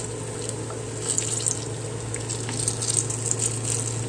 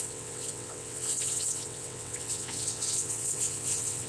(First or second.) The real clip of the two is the first